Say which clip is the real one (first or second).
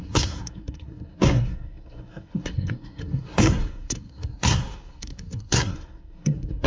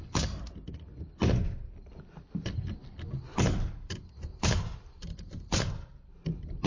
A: second